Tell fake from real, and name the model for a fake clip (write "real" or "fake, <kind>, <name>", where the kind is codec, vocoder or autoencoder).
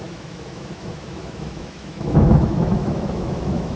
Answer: fake, autoencoder, DAC-VAE